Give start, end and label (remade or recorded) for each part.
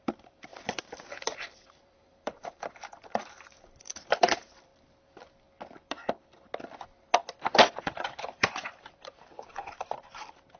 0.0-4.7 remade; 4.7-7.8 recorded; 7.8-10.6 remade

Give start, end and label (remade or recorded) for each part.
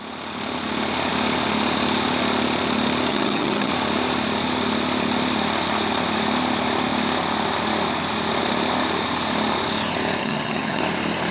0.0-3.1 recorded; 3.1-3.7 remade; 3.7-10.2 recorded; 10.2-10.8 remade; 10.8-11.3 recorded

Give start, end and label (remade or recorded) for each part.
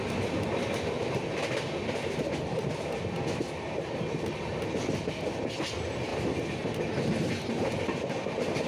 0.0-8.7 recorded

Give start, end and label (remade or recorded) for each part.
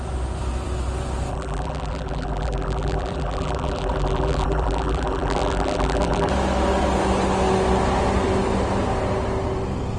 0.0-1.3 recorded; 1.3-6.3 remade; 6.3-10.0 recorded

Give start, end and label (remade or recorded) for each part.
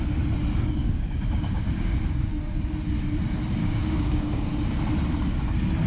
0.0-0.8 recorded; 0.8-2.3 remade; 2.3-3.6 recorded; 3.6-4.5 remade; 4.5-5.9 recorded